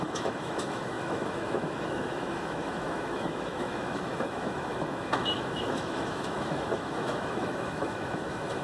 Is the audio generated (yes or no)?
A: yes